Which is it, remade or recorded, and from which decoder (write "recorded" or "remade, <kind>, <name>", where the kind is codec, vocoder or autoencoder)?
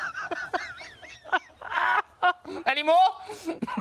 recorded